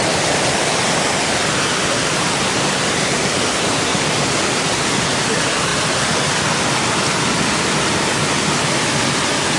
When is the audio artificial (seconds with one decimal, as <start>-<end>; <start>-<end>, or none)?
2.0-2.8; 3.9-5.0

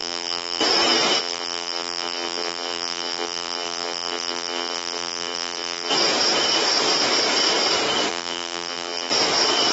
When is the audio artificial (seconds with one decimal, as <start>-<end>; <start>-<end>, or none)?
0.0-0.6; 1.2-5.9; 8.1-9.1

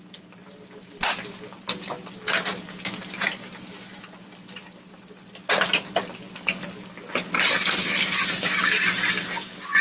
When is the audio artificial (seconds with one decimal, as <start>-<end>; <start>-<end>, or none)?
3.0-3.6

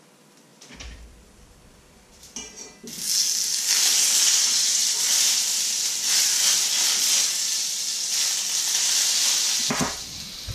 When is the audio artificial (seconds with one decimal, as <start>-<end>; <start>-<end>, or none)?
0.5-2.9; 4.8-7.4